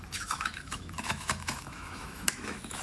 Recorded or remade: remade